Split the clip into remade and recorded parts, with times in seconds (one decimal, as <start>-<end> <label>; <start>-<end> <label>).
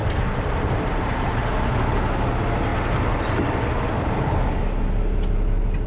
0.0-1.7 remade; 1.7-5.9 recorded